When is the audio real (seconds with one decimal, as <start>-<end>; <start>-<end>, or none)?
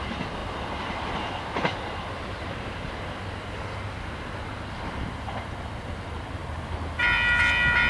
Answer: 0.0-7.9